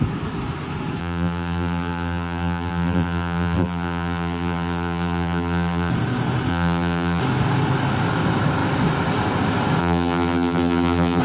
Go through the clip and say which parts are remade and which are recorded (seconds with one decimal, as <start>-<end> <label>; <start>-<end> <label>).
0.0-1.0 recorded; 1.0-5.9 remade; 5.9-6.5 recorded; 6.5-7.2 remade; 7.2-9.8 recorded; 9.8-11.2 remade

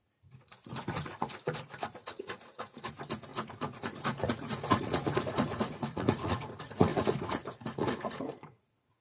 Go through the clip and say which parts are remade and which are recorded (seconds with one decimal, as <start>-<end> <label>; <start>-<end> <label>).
0.0-9.0 remade

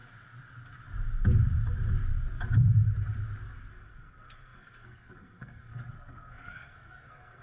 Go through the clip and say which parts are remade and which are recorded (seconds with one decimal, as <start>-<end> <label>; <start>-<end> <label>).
0.0-3.7 recorded; 3.7-7.4 remade

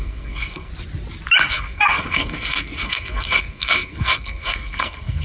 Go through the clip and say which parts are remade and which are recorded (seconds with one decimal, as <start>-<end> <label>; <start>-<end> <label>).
0.0-0.7 remade; 0.7-1.5 recorded; 1.5-5.2 remade

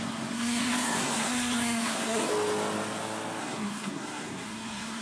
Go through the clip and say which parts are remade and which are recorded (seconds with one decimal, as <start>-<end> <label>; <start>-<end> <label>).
0.0-2.3 remade; 2.3-3.4 recorded; 3.4-5.0 remade

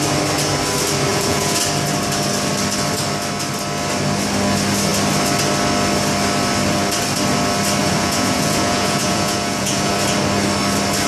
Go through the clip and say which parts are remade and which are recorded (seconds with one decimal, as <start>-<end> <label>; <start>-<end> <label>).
0.0-1.1 recorded; 1.1-1.6 remade; 1.6-7.8 recorded; 7.8-9.9 remade; 9.9-11.1 recorded

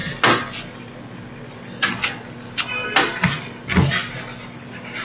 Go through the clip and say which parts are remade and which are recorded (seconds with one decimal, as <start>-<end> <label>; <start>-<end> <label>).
0.0-5.0 recorded

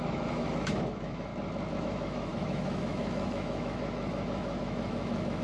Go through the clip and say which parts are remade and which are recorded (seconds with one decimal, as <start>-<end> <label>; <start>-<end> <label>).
0.0-1.3 remade; 1.3-1.8 recorded; 1.8-5.4 remade